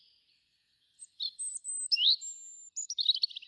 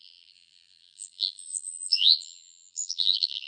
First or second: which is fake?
second